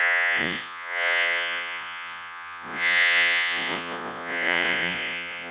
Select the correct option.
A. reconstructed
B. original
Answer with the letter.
A